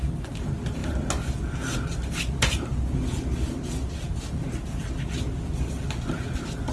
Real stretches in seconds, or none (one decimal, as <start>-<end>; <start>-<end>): 0.0-6.7